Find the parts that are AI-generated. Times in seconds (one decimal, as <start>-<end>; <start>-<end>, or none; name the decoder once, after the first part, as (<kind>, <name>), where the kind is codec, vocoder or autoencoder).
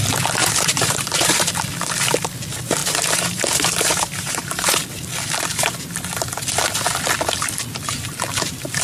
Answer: 0.4-1.5 (vocoder, BigVGAN v2); 2.8-4.8